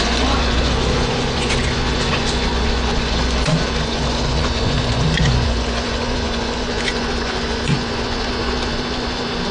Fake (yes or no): yes